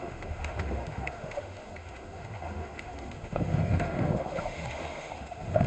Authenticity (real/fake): fake